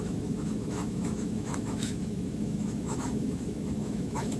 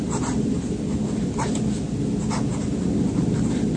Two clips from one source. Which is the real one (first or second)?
second